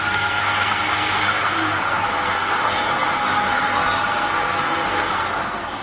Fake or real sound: fake